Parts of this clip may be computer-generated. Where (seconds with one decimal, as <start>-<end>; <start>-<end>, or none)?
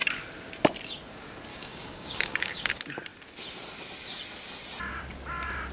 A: 1.5-2.7